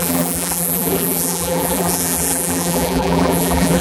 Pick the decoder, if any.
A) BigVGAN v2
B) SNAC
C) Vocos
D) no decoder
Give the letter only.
A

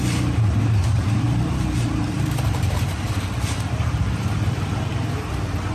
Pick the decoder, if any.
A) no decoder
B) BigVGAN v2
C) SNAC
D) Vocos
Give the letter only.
B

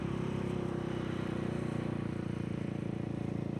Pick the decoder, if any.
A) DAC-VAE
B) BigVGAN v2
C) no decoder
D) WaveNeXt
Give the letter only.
B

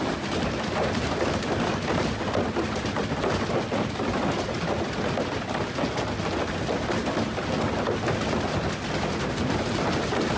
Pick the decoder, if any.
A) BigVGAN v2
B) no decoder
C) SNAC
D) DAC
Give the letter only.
B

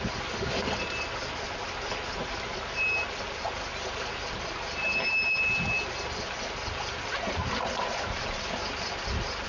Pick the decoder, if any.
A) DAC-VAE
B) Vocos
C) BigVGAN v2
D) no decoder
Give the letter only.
D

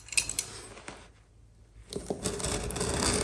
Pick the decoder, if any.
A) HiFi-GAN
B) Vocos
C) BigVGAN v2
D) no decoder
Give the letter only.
D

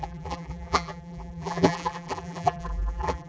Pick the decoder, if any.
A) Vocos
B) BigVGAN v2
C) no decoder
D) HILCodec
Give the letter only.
B